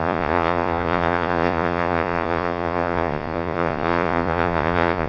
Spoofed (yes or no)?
yes